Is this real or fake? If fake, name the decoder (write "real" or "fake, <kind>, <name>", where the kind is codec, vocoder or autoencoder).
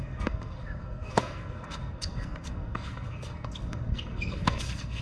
fake, codec, SNAC